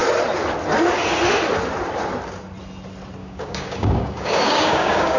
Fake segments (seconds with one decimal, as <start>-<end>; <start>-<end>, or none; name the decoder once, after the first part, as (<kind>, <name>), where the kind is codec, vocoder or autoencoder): 3.2-5.2 (codec, DAC)